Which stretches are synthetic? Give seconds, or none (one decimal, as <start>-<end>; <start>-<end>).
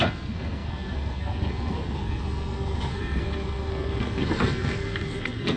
0.0-5.6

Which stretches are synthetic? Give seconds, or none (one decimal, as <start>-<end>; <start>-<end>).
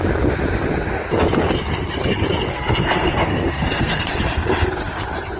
2.5-4.1